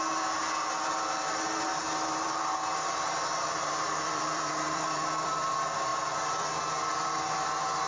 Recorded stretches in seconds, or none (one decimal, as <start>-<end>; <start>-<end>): 0.0-1.7; 5.5-5.9; 6.5-7.9